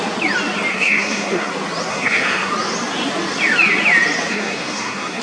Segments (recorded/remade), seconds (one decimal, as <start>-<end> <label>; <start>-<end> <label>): 0.0-0.7 recorded; 0.7-1.5 remade; 1.5-1.9 recorded; 1.9-2.5 remade; 2.5-4.3 recorded; 4.3-5.2 remade